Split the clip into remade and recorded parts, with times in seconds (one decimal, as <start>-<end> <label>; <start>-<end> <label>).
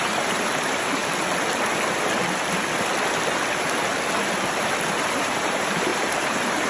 0.0-1.0 remade; 1.0-5.0 recorded; 5.0-6.7 remade